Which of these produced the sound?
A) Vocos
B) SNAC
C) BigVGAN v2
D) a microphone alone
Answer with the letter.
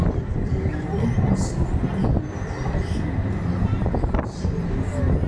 D